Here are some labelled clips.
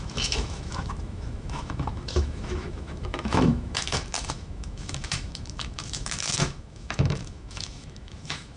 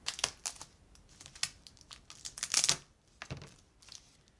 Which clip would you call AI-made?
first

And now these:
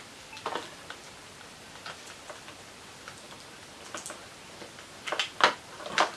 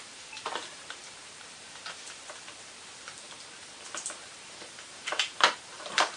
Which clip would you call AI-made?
second